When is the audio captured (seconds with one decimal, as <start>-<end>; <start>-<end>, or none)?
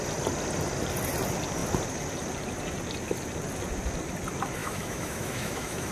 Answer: 0.0-4.6